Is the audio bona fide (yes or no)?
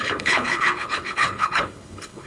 no